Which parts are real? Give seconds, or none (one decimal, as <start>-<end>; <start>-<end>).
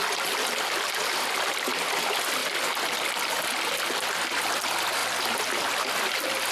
0.0-6.5